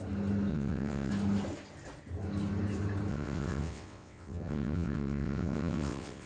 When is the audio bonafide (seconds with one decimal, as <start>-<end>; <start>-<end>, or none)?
0.0-0.5; 1.1-3.1